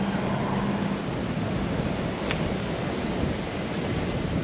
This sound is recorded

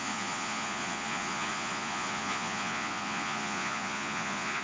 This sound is remade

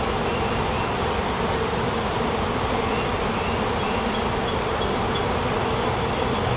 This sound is remade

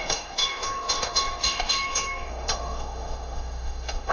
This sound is remade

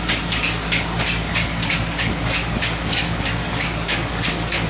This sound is remade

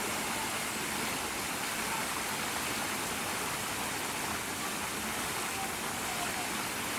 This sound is recorded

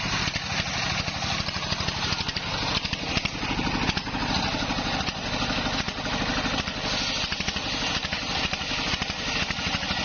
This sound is recorded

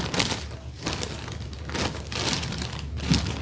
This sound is recorded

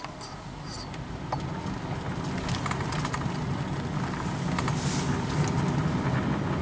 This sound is recorded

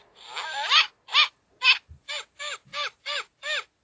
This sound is recorded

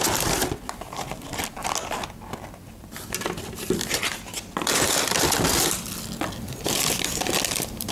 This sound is recorded